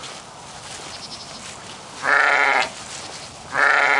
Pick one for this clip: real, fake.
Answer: real